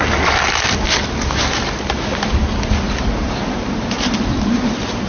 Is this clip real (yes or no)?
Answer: yes